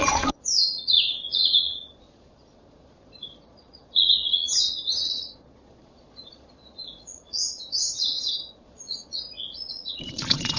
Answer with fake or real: fake